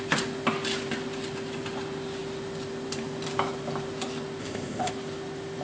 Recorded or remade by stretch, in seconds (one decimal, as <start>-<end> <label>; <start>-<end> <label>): 0.0-4.4 recorded; 4.4-4.9 remade; 4.9-5.6 recorded